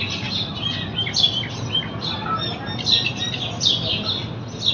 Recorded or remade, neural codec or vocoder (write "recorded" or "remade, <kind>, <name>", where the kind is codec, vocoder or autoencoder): recorded